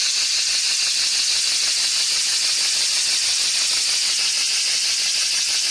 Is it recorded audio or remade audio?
recorded